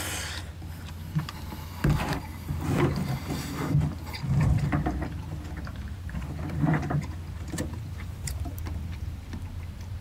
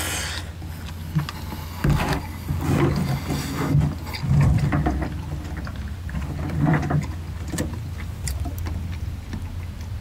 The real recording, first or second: second